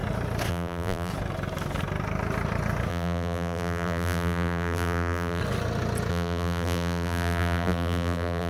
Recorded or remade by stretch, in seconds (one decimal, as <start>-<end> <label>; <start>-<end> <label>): 0.0-0.5 recorded; 0.5-1.1 remade; 1.1-2.9 recorded; 2.9-5.4 remade; 5.4-6.1 recorded; 6.1-8.5 remade